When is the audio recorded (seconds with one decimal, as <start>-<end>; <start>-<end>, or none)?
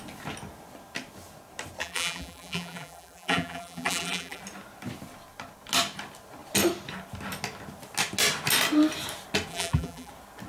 0.0-1.8; 4.4-9.5; 10.1-10.5